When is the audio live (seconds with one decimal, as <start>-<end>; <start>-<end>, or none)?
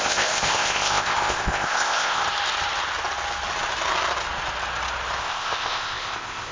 2.2-5.2